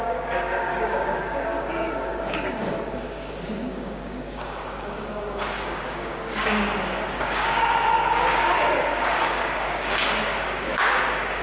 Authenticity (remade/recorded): remade